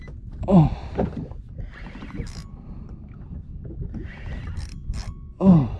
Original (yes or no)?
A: yes